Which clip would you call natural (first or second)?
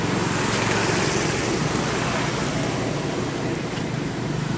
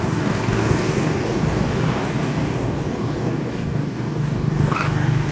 first